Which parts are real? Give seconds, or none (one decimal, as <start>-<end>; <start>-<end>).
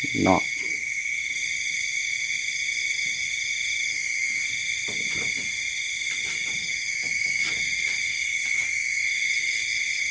0.0-10.1